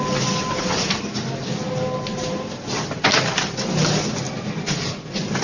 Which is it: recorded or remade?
recorded